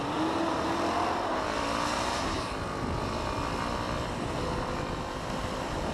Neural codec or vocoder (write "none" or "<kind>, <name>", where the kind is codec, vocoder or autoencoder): none